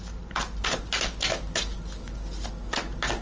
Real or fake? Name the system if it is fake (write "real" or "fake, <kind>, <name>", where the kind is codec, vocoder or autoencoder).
real